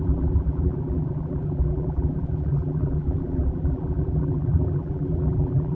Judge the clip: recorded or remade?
remade